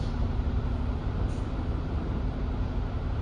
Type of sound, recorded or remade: recorded